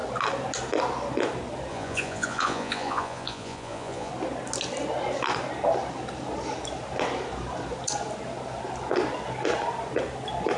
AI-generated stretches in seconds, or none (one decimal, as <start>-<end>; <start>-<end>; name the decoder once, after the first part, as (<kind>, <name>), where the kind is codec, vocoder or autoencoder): 1.7-4.1 (vocoder, Vocos)